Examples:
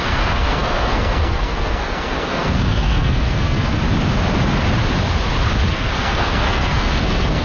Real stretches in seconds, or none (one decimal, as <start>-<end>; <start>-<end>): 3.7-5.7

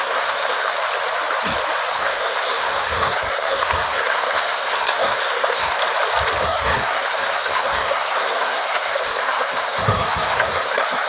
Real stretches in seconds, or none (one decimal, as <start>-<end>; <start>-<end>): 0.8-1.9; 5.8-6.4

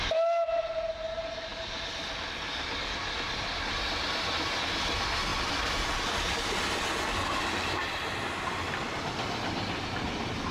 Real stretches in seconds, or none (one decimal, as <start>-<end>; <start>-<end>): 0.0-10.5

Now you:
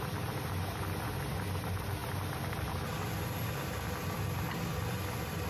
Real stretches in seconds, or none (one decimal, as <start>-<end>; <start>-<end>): 0.0-5.5

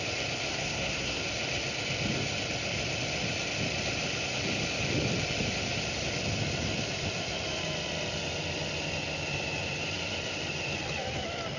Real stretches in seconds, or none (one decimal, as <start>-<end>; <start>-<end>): 0.0-0.5; 1.2-11.6

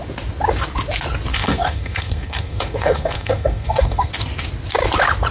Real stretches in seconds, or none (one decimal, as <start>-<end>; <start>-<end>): 0.0-1.3; 4.1-5.3

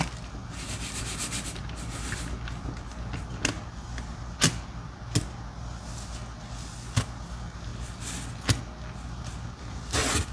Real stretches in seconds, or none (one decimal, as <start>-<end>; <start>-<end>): 0.0-10.3